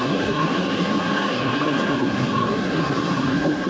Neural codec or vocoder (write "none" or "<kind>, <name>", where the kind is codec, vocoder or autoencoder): codec, SNAC